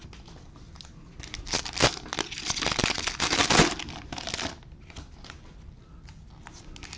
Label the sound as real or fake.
real